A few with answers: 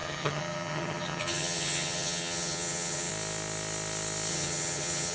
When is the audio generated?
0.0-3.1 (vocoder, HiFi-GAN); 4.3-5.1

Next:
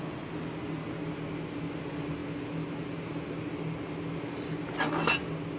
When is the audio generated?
none

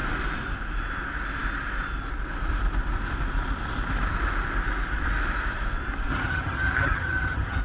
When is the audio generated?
6.1-7.6 (vocoder, HiFi-GAN)